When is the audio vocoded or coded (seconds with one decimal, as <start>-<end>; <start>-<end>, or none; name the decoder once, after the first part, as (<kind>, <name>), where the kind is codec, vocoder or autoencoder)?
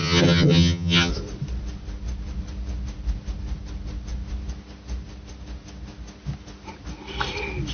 0.0-1.1 (vocoder, HiFi-GAN)